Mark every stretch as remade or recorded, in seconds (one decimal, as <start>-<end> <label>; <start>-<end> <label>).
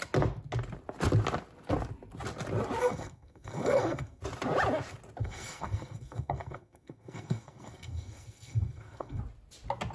0.0-2.8 recorded; 2.8-4.2 remade; 4.2-5.2 recorded; 5.2-9.2 remade; 9.2-9.9 recorded